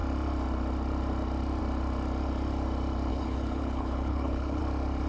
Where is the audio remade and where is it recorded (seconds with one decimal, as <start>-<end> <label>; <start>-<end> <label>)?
0.0-3.1 recorded; 3.1-4.6 remade; 4.6-5.1 recorded